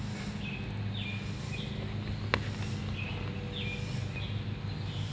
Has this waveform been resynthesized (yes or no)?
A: no